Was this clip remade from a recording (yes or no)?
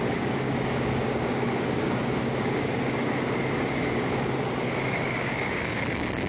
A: yes